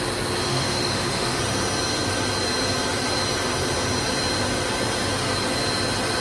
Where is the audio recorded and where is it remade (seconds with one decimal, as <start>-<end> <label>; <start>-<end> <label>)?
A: 0.0-0.5 recorded; 0.5-1.4 remade; 1.4-6.2 recorded